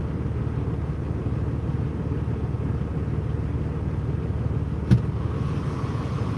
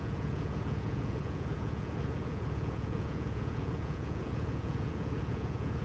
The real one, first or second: first